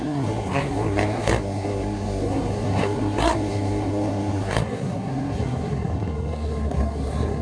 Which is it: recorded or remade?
remade